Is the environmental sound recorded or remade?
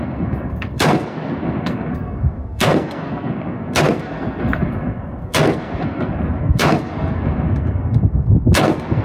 remade